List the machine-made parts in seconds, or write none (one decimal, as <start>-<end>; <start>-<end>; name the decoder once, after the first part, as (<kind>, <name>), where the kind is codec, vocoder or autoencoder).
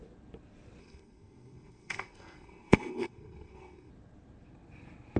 0.8-3.9 (codec, SNAC)